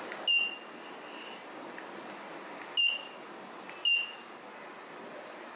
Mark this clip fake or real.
real